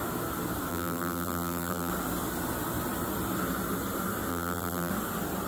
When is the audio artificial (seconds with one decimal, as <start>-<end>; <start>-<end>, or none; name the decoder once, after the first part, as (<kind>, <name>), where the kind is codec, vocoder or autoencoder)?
0.7-1.9 (vocoder, BigVGAN v2); 4.3-4.9

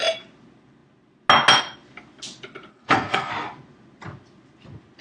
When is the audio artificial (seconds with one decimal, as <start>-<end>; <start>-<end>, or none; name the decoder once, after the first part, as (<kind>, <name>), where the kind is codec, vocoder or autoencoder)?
2.7-3.3 (codec, SNAC)

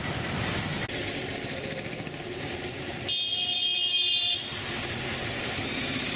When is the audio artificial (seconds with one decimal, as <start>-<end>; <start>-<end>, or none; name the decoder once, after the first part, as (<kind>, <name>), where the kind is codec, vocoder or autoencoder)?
none

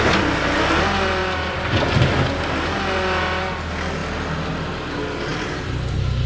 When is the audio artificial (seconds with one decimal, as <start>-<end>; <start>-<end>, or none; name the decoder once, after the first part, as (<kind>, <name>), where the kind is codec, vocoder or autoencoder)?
4.0-4.5 (vocoder, BigVGAN v2); 5.3-6.3

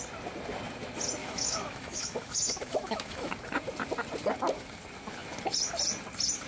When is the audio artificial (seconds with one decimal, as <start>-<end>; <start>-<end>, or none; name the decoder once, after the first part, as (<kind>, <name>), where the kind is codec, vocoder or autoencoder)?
1.2-3.3 (autoencoder, DAC-VAE)

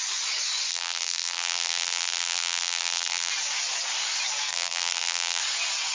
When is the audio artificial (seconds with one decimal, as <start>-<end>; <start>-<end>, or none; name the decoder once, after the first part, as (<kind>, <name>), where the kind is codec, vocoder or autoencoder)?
0.7-3.3 (vocoder, BigVGAN v2); 4.5-5.4

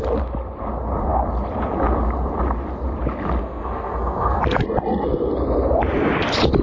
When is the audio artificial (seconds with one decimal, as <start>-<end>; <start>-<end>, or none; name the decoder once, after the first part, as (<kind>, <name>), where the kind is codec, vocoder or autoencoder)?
3.4-4.4 (codec, SNAC)